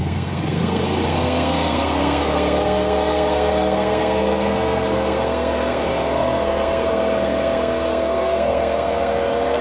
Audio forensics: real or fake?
fake